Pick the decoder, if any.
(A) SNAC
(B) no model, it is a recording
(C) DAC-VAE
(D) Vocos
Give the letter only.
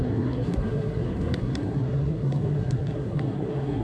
A